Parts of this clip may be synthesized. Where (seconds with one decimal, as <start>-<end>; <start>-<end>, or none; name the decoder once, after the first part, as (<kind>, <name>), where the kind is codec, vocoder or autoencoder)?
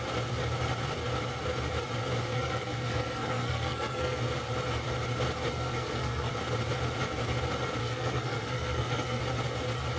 2.3-4.2 (codec, SNAC); 5.5-6.3; 7.8-9.2